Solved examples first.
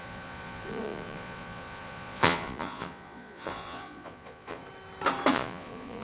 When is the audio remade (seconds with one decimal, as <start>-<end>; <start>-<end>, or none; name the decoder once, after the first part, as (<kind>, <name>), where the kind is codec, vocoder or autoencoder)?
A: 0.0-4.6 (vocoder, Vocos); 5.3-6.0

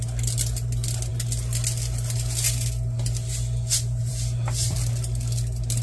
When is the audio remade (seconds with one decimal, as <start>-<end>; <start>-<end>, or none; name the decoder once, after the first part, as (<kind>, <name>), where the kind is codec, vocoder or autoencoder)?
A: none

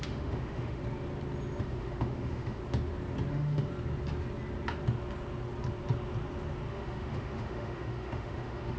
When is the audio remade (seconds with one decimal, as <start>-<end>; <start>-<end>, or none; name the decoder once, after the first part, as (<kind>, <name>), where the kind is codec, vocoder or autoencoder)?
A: 0.0-0.8 (autoencoder, DAC-VAE); 1.6-2.6; 3.3-3.7; 6.7-8.8

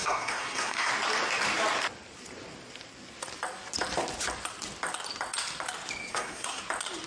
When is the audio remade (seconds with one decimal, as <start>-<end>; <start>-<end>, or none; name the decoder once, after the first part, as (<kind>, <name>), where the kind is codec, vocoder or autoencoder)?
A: 0.0-0.9 (codec, SNAC); 6.1-6.6

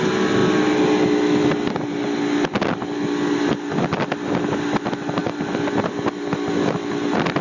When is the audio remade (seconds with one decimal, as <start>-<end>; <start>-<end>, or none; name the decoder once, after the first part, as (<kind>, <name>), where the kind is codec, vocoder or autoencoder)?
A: none

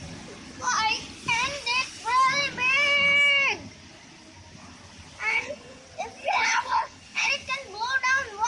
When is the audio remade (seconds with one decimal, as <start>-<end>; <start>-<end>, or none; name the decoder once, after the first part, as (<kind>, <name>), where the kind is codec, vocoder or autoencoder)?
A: 5.3-5.8 (codec, HILCodec); 6.2-7.3